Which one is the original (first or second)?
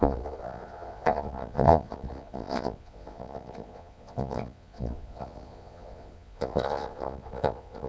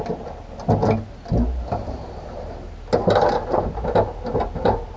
second